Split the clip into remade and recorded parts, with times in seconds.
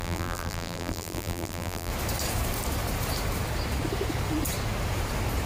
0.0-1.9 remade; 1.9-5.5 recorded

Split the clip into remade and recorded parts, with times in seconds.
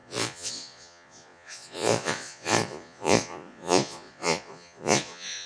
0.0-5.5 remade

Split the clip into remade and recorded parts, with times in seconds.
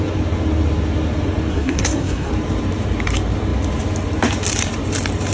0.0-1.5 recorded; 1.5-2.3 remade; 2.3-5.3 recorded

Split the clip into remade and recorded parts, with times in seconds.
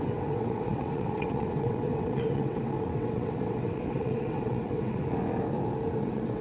0.0-5.0 remade; 5.0-6.0 recorded; 6.0-6.4 remade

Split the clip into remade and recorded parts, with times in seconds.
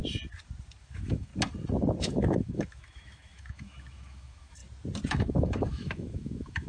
0.0-0.8 recorded; 0.8-1.3 remade; 1.3-2.0 recorded; 2.0-4.6 remade; 4.6-5.1 recorded; 5.1-6.7 remade